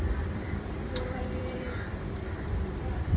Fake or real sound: fake